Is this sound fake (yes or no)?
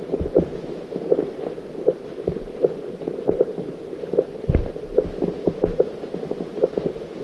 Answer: no